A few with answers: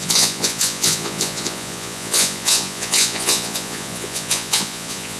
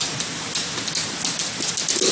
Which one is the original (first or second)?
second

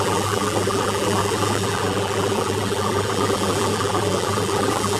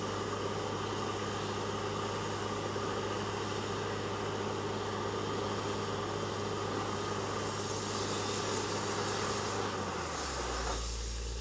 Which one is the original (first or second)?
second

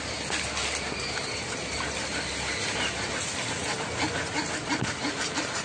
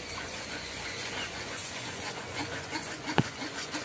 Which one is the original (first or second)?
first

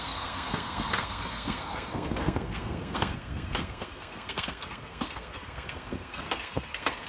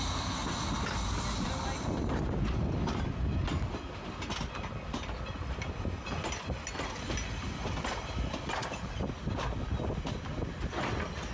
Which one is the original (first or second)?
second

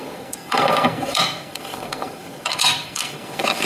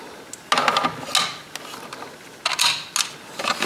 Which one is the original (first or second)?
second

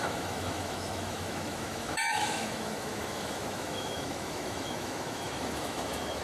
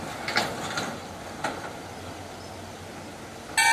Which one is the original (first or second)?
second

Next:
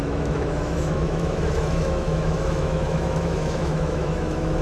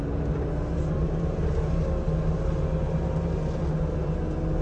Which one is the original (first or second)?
second